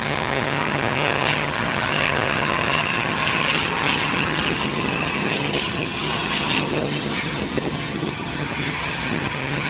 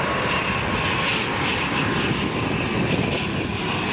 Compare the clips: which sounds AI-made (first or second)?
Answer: first